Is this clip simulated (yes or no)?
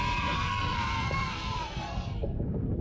yes